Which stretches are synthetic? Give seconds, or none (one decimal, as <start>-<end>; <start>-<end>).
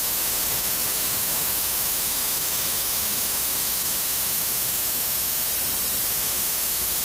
0.0-5.5; 6.1-7.0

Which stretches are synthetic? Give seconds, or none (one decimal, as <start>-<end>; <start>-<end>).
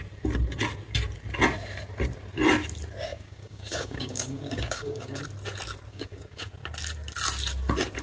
3.1-5.2; 5.9-6.5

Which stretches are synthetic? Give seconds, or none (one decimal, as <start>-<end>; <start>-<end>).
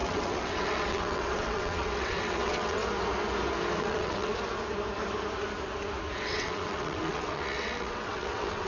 0.0-2.8; 3.8-4.3; 6.2-8.7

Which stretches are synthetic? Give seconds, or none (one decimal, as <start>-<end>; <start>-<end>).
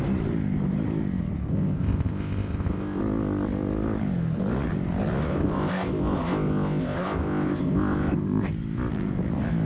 1.5-3.0; 5.3-8.5